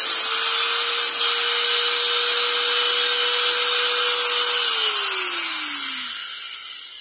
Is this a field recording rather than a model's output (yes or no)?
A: yes